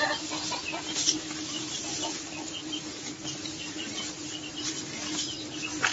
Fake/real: real